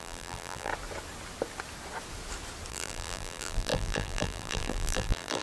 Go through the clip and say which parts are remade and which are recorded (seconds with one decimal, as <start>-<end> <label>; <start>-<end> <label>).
0.0-0.7 remade; 0.7-2.7 recorded; 2.7-5.4 remade